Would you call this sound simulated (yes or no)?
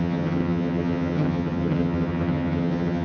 yes